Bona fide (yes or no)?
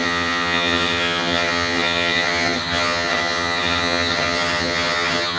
no